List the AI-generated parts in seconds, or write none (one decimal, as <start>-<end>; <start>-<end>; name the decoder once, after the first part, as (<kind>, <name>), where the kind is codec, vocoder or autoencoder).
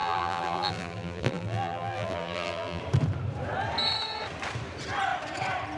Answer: 0.0-2.8 (vocoder, BigVGAN v2)